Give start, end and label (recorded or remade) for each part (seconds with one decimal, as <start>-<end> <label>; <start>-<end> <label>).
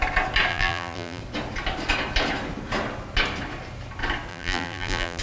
0.0-0.5 recorded; 0.5-1.2 remade; 1.2-4.3 recorded; 4.3-5.2 remade